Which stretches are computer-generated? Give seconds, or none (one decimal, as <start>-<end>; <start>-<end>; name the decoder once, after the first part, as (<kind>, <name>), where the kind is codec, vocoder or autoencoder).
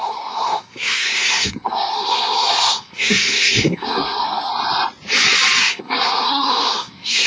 0.0-4.5 (codec, SNAC); 5.6-7.3